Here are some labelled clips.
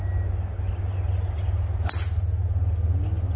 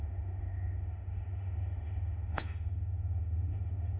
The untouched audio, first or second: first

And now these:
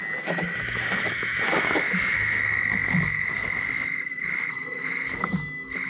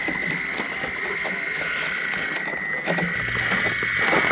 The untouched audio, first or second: second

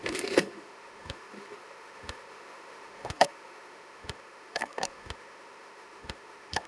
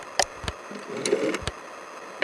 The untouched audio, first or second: second